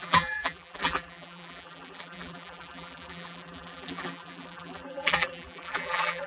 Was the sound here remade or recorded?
remade